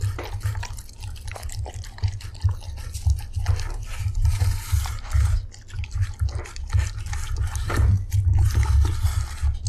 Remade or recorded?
recorded